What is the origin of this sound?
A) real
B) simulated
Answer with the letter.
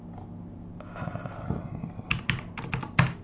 A